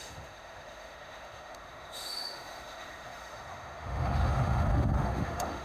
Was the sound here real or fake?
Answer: fake